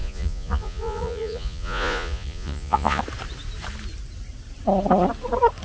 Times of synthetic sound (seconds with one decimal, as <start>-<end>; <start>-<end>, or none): 0.0-3.0